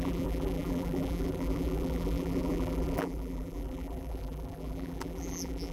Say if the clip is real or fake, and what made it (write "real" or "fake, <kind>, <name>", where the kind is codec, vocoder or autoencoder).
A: fake, vocoder, BigVGAN v2